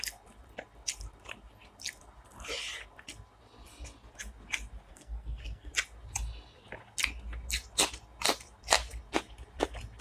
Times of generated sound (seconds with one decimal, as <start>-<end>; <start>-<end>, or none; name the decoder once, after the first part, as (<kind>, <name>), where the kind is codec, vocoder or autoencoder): 4.9-5.7 (codec, SNAC)